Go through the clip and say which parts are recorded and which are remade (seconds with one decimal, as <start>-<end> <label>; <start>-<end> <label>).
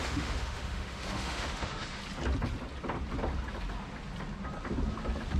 0.0-2.0 remade; 2.0-5.4 recorded